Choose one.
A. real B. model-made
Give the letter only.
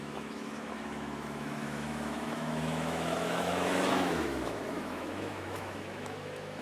B